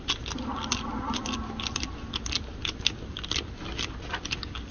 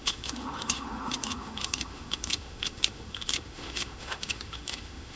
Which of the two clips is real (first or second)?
first